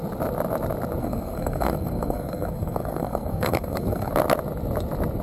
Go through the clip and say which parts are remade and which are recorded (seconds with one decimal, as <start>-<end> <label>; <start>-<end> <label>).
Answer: 0.0-1.0 recorded; 1.0-4.1 remade; 4.1-5.2 recorded